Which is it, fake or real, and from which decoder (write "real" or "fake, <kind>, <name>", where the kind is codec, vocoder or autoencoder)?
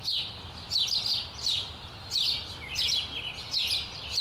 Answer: real